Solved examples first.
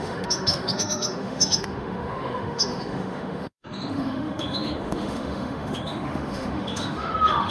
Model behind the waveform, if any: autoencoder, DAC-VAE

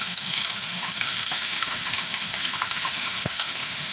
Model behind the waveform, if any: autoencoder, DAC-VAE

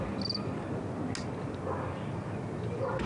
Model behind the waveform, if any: none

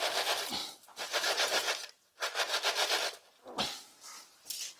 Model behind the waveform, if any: none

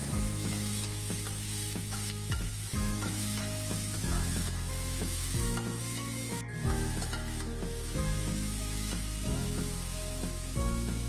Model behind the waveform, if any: autoencoder, DAC-VAE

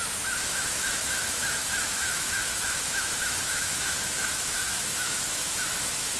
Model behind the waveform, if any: autoencoder, DAC-VAE